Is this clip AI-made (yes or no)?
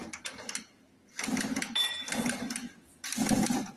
no